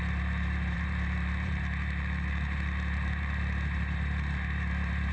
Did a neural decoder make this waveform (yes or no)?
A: yes